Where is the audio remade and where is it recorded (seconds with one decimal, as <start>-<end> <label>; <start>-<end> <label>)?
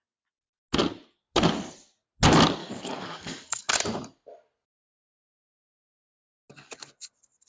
0.0-2.6 recorded; 2.6-3.7 remade; 3.7-7.5 recorded